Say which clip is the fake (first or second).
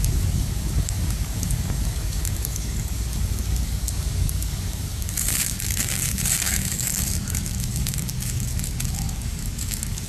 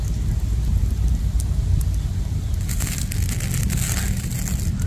first